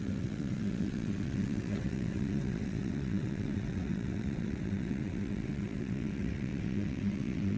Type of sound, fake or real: fake